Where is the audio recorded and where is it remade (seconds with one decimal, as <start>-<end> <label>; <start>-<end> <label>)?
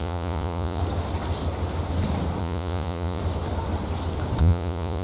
0.0-0.8 remade; 0.8-2.4 recorded; 2.4-3.2 remade; 3.2-4.4 recorded; 4.4-5.0 remade